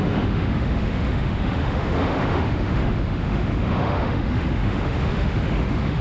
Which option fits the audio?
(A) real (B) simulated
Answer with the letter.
B